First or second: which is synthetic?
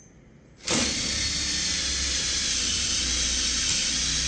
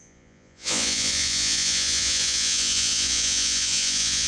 second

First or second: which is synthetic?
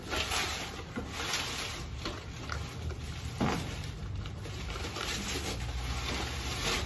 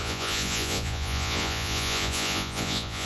second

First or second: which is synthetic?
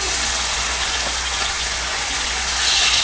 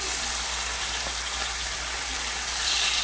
first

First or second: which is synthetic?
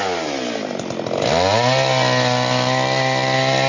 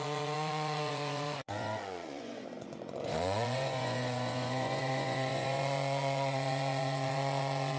second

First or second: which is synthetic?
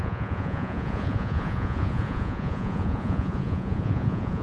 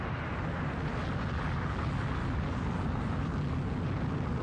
first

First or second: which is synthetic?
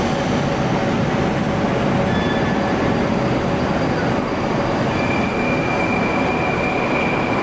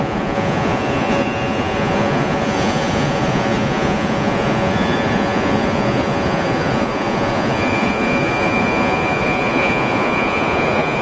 second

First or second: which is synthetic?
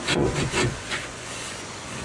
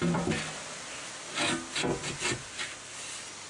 first